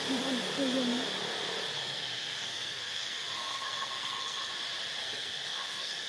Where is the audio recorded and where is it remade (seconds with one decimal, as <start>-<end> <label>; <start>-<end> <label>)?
0.0-1.8 recorded; 1.8-4.5 remade; 4.5-5.0 recorded; 5.0-6.1 remade